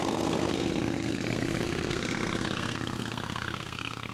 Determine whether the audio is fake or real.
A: fake